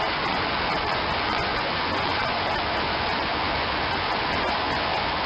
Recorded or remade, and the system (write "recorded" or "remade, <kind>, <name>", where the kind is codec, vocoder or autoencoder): remade, vocoder, Vocos